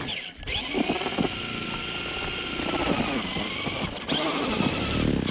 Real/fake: real